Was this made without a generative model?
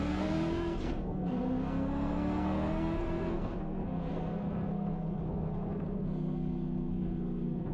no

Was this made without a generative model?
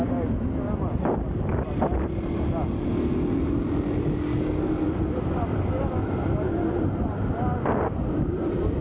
yes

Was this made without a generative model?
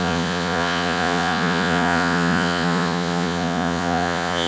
no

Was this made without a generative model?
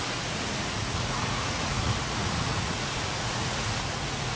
no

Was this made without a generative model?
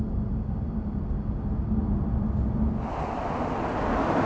yes